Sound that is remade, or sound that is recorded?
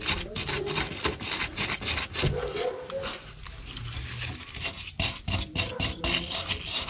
recorded